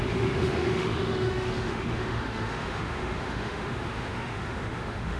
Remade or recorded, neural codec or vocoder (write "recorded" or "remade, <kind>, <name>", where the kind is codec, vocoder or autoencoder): remade, autoencoder, DAC-VAE